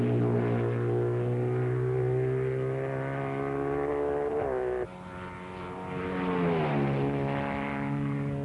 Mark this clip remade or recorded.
recorded